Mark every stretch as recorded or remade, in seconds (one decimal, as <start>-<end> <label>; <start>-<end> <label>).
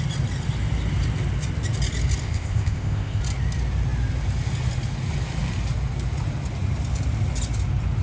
0.0-2.2 recorded; 2.2-3.2 remade; 3.2-8.0 recorded